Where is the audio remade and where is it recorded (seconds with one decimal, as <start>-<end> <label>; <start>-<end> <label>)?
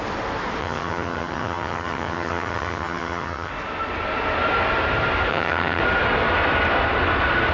0.0-0.6 recorded; 0.6-3.5 remade; 3.5-5.3 recorded; 5.3-5.8 remade; 5.8-7.5 recorded